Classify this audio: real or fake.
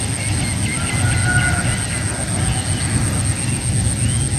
real